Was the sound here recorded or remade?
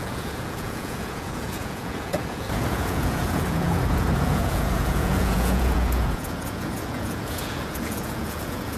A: remade